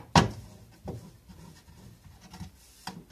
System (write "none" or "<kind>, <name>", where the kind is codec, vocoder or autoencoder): none